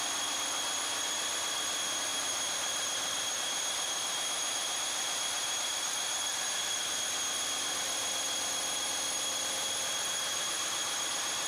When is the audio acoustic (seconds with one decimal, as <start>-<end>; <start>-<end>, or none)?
0.0-2.1; 7.1-10.3; 11.1-11.5

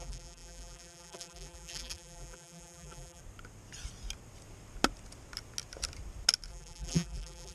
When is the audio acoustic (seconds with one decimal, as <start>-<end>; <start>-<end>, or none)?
3.2-6.5

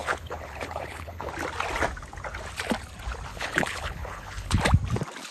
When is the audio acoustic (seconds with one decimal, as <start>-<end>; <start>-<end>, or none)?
1.3-3.3; 4.6-5.3

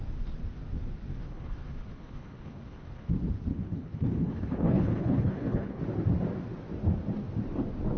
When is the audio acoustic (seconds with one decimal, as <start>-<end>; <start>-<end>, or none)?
0.0-1.1; 3.1-3.5; 5.8-8.0

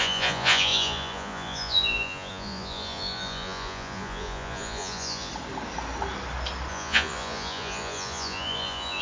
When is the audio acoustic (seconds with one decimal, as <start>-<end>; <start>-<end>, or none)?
5.3-6.7

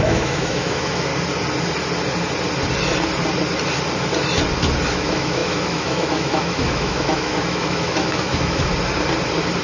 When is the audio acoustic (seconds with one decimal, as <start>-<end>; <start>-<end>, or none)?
1.1-4.9; 8.7-9.6